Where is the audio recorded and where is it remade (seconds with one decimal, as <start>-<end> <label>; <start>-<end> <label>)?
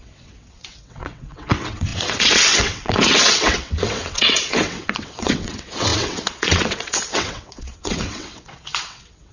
0.0-9.3 remade